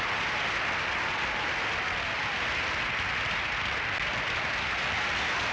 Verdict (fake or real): real